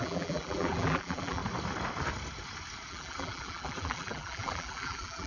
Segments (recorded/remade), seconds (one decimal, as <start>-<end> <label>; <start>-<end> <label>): 0.0-1.4 remade; 1.4-2.9 recorded; 2.9-5.3 remade